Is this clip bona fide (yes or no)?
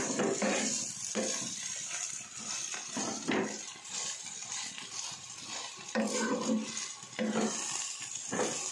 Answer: yes